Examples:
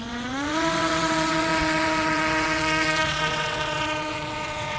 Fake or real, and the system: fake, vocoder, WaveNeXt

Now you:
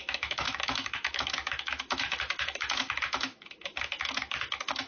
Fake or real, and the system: fake, autoencoder, DAC-VAE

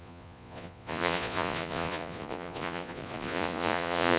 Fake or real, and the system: fake, vocoder, Vocos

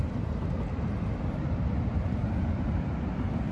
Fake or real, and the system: real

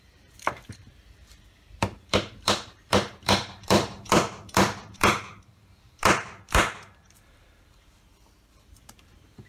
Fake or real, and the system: fake, vocoder, BigVGAN v2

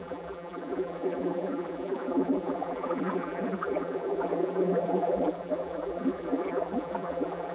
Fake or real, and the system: fake, vocoder, BigVGAN v2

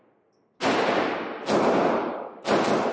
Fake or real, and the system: real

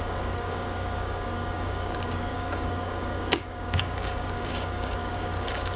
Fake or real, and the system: fake, codec, DAC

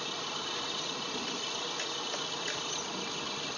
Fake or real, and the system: real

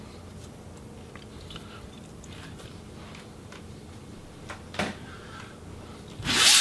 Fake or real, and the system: real